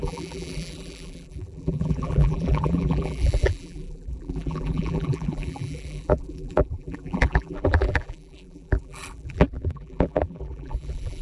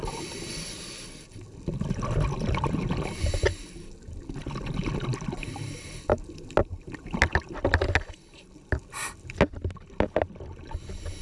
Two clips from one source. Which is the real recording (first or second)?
second